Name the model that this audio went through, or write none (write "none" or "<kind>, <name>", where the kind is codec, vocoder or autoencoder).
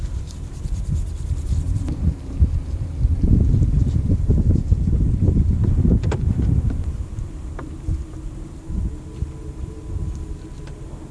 vocoder, BigVGAN v2